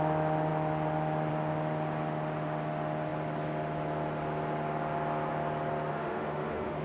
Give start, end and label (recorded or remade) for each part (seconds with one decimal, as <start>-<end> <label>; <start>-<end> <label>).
0.0-5.9 recorded; 5.9-6.8 remade